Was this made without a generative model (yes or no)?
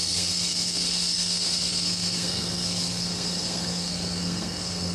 no